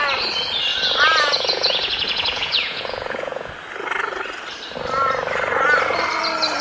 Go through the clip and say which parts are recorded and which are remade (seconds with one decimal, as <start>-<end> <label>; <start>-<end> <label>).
0.0-0.7 recorded; 0.7-3.5 remade; 3.5-6.6 recorded